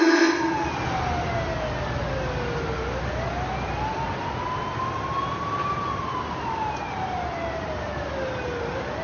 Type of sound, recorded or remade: recorded